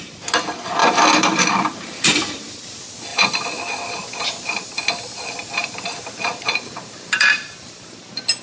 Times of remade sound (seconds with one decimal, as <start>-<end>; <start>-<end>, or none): 0.8-2.6; 4.2-4.8; 5.6-8.0